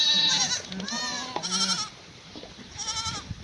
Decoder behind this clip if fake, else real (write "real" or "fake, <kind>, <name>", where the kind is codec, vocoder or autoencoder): real